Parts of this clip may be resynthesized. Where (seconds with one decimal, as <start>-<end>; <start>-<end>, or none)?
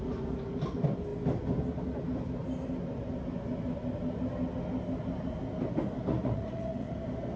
6.1-6.9